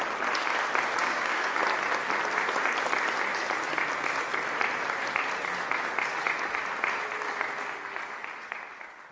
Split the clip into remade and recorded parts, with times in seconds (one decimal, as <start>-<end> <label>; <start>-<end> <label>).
0.0-1.0 recorded; 1.0-1.6 remade; 1.6-9.1 recorded

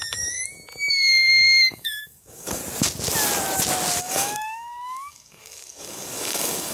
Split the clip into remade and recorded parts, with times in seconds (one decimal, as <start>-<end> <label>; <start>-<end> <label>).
0.0-0.4 remade; 0.4-0.9 recorded; 0.9-2.6 remade; 2.6-4.0 recorded; 4.0-6.7 remade

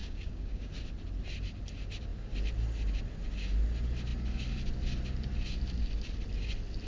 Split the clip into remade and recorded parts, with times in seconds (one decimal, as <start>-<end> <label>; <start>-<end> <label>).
0.0-0.7 remade; 0.7-6.9 recorded